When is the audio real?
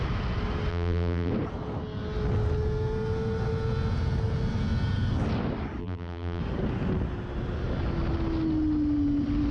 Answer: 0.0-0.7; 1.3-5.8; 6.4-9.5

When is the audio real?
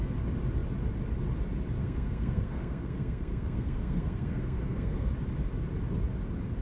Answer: 0.0-1.8; 5.1-6.6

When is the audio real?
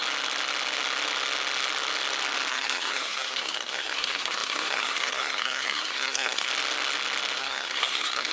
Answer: 0.0-2.5; 6.5-7.4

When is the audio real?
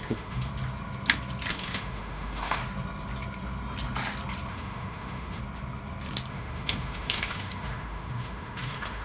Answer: 0.5-1.5; 2.6-4.5; 5.4-6.3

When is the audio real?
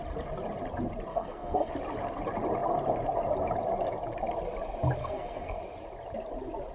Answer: 0.0-1.1; 1.7-5.0; 5.6-6.7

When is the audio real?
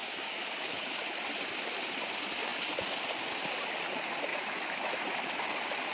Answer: 1.0-4.3; 5.0-5.9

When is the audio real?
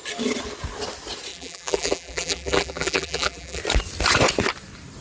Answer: 0.0-1.3; 3.6-5.0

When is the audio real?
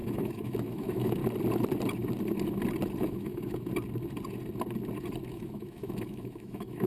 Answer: 1.2-3.0; 3.7-5.3